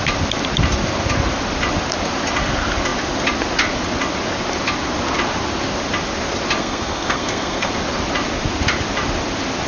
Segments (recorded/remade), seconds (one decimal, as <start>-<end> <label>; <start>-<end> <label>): 0.0-6.6 recorded; 6.6-7.7 remade; 7.7-9.7 recorded